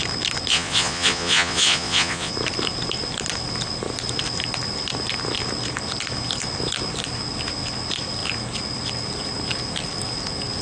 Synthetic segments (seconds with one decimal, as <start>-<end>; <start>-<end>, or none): 0.5-2.3